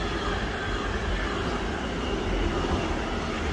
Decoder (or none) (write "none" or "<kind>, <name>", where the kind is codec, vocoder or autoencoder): none